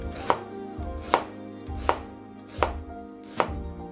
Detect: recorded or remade recorded